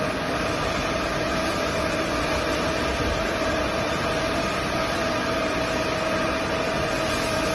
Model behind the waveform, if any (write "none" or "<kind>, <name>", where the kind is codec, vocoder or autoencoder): none